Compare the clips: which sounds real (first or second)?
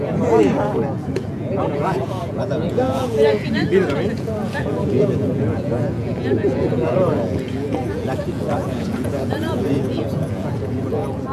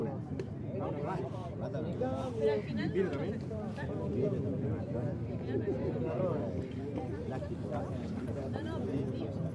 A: second